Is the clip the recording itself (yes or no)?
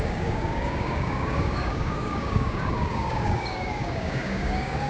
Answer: no